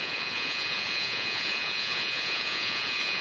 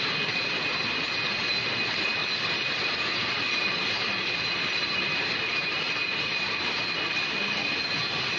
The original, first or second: second